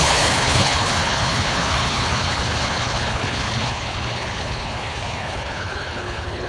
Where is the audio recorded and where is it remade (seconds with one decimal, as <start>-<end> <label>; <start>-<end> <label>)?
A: 0.0-6.5 remade